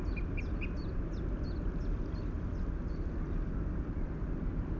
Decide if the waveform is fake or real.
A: real